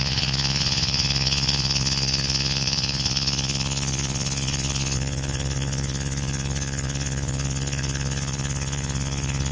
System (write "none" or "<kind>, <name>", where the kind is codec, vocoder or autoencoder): vocoder, Vocos